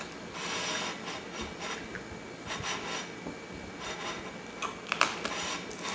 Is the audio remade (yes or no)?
no